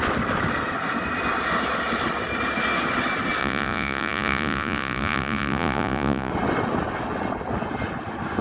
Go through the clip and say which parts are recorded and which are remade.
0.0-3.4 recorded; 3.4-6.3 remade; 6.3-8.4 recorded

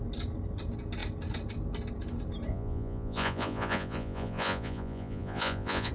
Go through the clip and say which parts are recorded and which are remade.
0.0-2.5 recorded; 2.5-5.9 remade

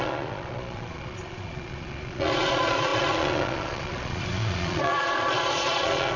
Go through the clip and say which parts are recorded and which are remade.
0.0-6.2 remade

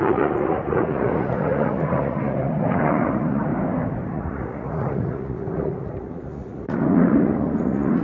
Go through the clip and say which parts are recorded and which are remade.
0.0-3.5 remade; 3.5-4.1 recorded; 4.1-8.0 remade

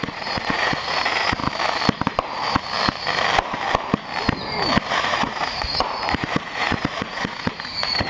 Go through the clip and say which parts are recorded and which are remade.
0.0-1.4 remade; 1.4-4.9 recorded; 4.9-8.1 remade